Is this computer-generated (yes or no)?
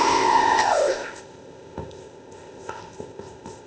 yes